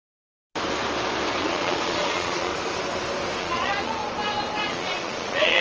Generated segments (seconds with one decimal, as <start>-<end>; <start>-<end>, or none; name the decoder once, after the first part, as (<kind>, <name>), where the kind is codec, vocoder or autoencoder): 1.4-2.5 (vocoder, Vocos); 3.4-4.0; 4.6-5.6